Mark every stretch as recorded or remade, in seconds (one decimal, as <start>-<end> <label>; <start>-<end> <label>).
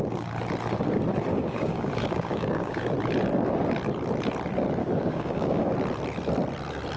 0.0-1.3 recorded; 1.3-2.8 remade; 2.8-4.8 recorded; 4.8-5.7 remade; 5.7-7.0 recorded